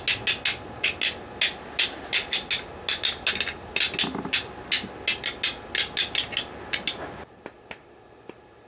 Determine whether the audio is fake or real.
real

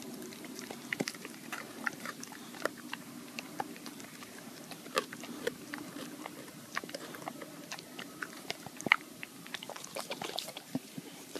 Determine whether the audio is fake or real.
fake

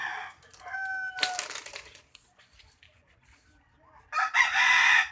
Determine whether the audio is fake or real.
real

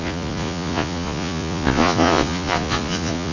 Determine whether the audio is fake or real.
fake